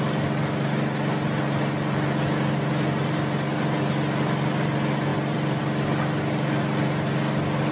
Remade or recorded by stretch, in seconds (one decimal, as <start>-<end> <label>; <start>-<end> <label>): 0.0-5.1 recorded; 5.1-5.6 remade; 5.6-7.7 recorded